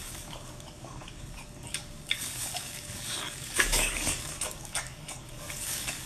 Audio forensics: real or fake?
fake